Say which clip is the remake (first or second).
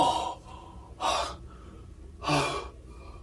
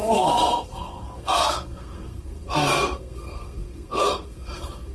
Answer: second